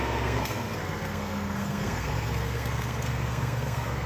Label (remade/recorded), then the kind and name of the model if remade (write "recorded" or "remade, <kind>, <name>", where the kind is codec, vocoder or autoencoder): remade, codec, SNAC